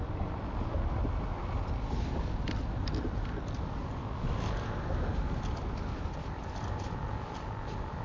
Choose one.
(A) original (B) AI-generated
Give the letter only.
A